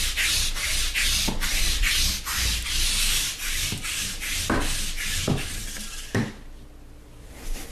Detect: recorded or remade recorded